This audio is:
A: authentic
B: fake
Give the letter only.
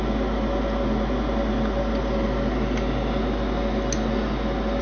A